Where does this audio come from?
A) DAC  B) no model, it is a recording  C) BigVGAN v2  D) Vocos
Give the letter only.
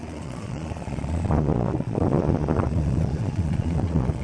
D